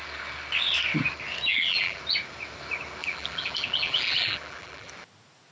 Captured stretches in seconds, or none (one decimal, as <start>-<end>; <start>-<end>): 0.0-1.5; 2.0-3.0; 4.9-5.5